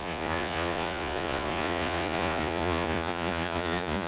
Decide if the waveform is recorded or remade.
remade